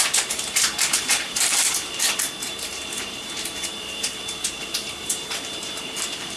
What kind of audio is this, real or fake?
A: fake